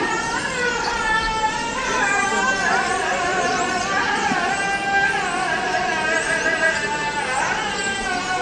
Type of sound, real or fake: real